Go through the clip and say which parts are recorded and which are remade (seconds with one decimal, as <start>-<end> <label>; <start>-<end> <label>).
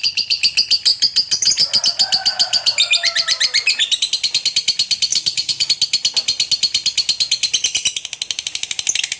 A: 0.0-5.1 recorded; 5.1-5.7 remade; 5.7-9.2 recorded